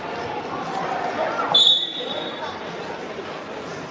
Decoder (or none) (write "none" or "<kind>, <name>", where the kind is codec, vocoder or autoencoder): none